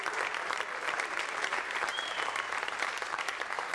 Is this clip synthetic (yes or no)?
yes